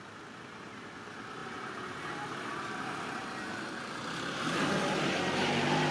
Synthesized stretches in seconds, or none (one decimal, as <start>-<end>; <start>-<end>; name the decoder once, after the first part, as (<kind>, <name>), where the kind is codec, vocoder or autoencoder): 1.4-4.9 (vocoder, BigVGAN v2)